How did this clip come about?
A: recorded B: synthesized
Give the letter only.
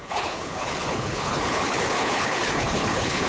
B